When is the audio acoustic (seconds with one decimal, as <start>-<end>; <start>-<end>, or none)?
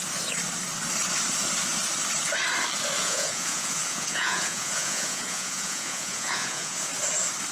0.0-3.0; 6.9-7.5